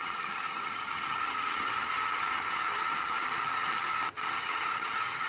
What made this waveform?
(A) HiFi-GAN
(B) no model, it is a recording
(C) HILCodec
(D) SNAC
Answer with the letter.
A